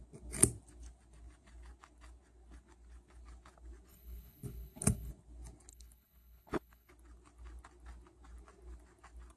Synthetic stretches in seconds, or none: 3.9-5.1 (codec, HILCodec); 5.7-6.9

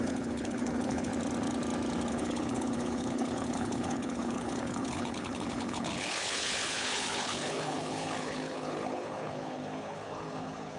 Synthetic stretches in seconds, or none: 0.0-1.1 (codec, HILCodec); 2.1-10.8

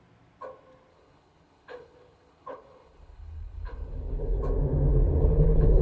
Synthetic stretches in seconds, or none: 0.9-4.4 (codec, HILCodec); 4.9-5.8

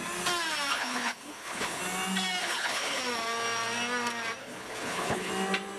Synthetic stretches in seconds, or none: 0.7-1.8 (codec, HILCodec); 2.4-3.0; 4.4-5.3

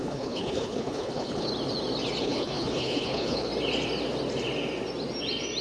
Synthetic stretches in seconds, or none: 0.0-1.5 (codec, HILCodec); 2.2-3.5

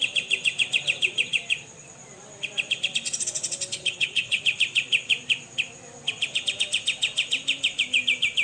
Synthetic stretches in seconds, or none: 3.7-4.4 (codec, HILCodec)